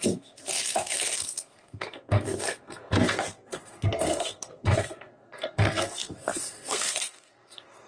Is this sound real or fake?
fake